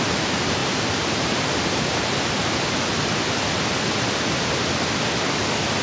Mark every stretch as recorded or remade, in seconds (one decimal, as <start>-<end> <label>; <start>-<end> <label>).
0.0-5.8 recorded